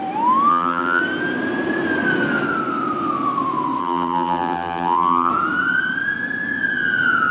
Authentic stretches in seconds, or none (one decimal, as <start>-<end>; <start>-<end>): 0.0-0.5; 1.0-3.8; 5.3-7.3